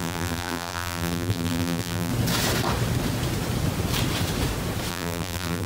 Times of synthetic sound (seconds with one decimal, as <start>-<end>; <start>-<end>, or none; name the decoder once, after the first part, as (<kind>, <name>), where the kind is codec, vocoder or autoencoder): 0.0-2.1 (vocoder, BigVGAN v2); 4.9-5.7